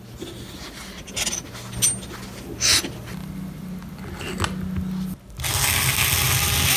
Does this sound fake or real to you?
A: real